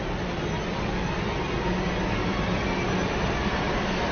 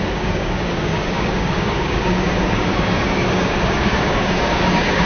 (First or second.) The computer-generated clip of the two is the second